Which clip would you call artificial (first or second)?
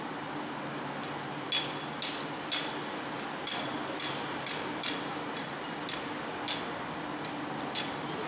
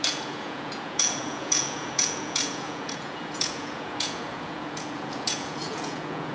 second